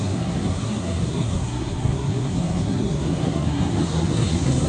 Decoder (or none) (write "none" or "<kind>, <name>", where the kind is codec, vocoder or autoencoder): codec, SNAC